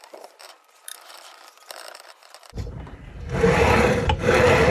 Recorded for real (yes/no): no